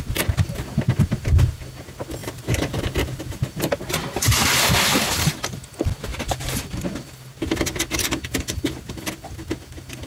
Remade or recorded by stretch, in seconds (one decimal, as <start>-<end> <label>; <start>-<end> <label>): 0.0-1.1 recorded; 1.1-1.6 remade; 1.6-2.2 recorded; 2.2-2.8 remade; 2.8-10.1 recorded